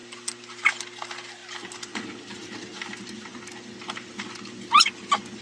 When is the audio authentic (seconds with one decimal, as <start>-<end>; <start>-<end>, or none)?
0.0-5.4